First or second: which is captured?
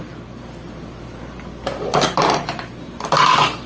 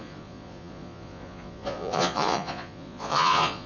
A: first